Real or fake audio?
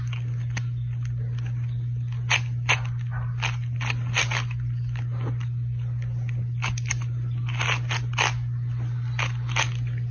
real